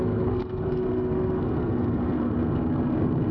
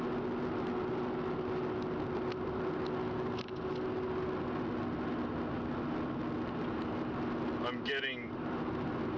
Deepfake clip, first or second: first